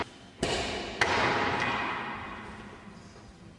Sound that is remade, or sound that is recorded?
recorded